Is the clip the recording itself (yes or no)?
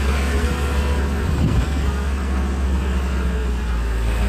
no